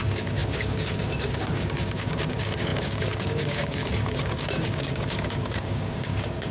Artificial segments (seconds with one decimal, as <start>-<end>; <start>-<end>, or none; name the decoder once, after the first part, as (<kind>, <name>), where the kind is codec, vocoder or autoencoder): 0.0-6.5 (codec, DAC)